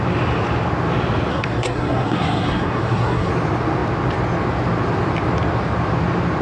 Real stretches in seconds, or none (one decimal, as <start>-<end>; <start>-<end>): 0.0-1.3; 3.3-6.4

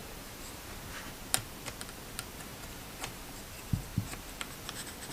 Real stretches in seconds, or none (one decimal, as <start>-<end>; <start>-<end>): 0.8-2.5; 3.3-3.9; 4.5-5.1

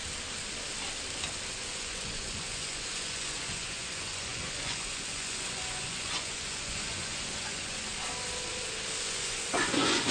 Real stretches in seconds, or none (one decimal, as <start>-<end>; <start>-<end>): 0.0-1.5; 7.9-9.0

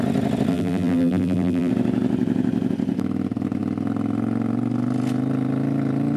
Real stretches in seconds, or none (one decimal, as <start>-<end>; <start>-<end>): 0.0-0.5; 1.7-6.2

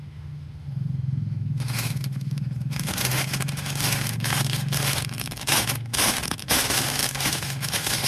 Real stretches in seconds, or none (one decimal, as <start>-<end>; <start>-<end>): none

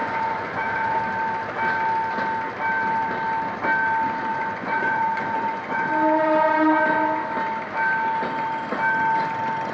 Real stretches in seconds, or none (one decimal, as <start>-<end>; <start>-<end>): 1.0-4.3; 5.9-9.7

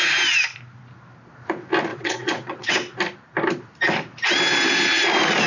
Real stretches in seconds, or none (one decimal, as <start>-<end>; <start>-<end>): 0.0-1.9; 2.7-5.5

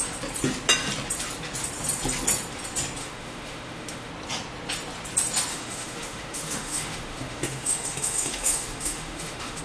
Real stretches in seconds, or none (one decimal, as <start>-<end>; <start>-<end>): 0.0-3.0; 4.1-5.5